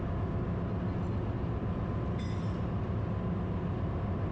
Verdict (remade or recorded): recorded